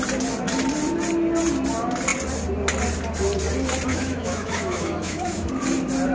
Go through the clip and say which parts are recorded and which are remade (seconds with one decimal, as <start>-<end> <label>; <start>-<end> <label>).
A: 0.0-3.9 recorded; 3.9-5.5 remade; 5.5-6.1 recorded